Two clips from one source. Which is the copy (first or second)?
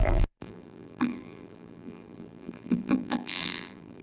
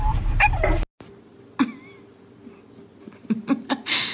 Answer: first